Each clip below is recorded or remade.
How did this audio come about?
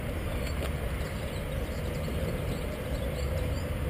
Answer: recorded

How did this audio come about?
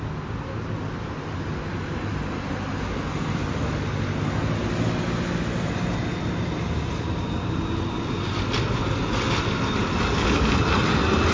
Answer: recorded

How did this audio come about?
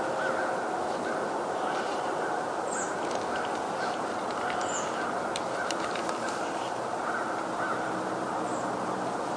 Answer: recorded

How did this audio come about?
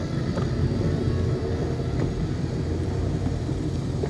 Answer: remade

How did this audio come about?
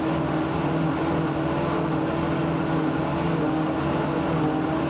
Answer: recorded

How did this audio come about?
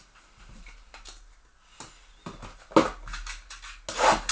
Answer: recorded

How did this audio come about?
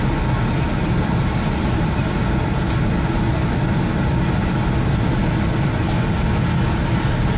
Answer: recorded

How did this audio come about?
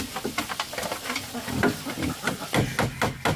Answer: recorded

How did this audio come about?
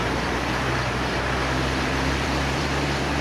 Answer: remade